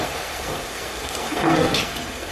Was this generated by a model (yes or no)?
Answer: yes